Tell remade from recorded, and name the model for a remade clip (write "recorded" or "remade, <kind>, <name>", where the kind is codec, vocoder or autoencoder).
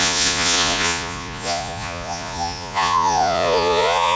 remade, vocoder, Vocos